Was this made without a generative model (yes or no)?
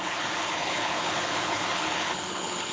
no